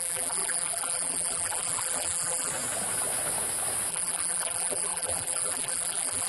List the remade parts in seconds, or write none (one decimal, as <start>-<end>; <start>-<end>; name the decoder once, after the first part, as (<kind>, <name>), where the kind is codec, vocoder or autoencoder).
0.0-2.5 (vocoder, BigVGAN v2); 3.9-6.3